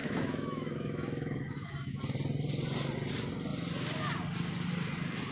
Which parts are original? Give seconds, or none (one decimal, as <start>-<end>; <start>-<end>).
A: 2.0-5.3